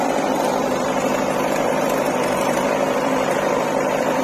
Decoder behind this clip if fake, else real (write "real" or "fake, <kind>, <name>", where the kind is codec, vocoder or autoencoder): fake, vocoder, BigVGAN v2